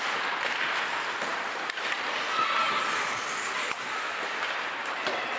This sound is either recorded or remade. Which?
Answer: recorded